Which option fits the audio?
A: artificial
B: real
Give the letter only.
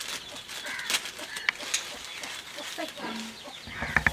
B